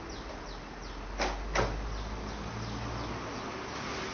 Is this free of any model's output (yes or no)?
yes